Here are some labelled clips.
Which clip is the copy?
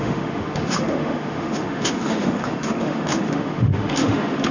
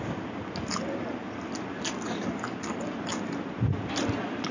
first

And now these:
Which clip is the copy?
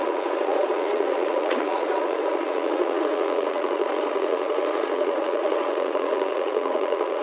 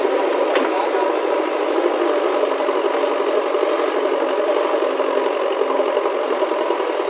first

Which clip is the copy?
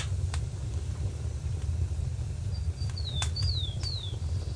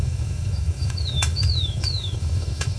second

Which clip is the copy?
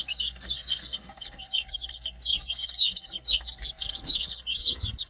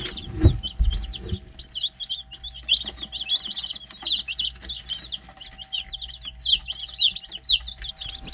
first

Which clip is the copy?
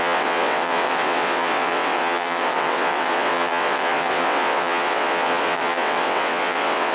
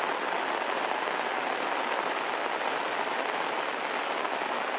first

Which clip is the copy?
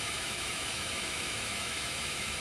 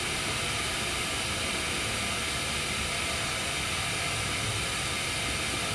first